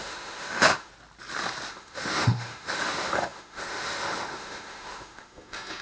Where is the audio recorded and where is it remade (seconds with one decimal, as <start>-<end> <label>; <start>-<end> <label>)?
0.0-0.9 remade; 0.9-1.7 recorded; 1.7-5.8 remade